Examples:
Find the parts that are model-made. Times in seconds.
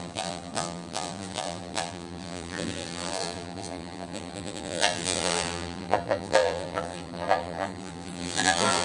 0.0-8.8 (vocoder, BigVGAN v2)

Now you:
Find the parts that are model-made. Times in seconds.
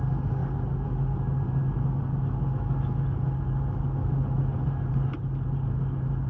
none